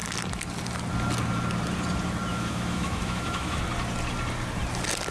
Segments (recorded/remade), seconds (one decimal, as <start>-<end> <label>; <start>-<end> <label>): 0.0-2.3 recorded; 2.3-3.6 remade; 3.6-5.1 recorded